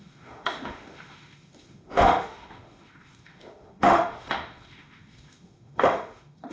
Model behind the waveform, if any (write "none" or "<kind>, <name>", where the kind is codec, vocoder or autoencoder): autoencoder, DAC-VAE